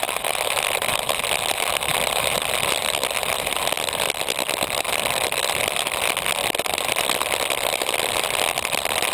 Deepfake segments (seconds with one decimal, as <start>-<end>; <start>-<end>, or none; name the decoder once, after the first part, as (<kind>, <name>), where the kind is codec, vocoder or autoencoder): none